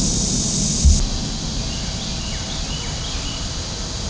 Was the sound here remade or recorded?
recorded